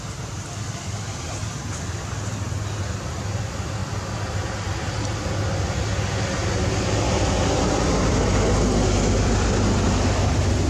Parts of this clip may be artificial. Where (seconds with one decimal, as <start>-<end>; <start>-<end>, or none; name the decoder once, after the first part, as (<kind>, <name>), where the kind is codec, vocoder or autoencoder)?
none